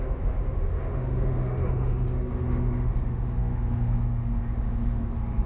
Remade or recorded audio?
remade